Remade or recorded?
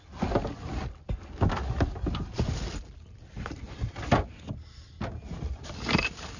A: recorded